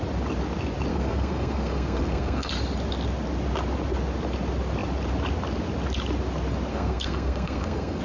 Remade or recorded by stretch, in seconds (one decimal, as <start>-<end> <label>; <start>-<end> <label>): 0.0-0.9 recorded; 0.9-2.5 remade; 2.5-6.7 recorded; 6.7-8.0 remade